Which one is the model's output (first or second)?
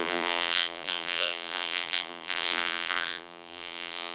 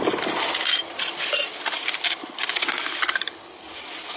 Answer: first